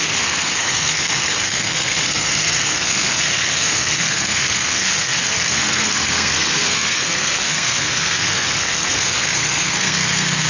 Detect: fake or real fake